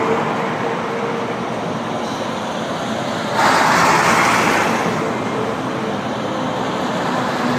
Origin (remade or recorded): recorded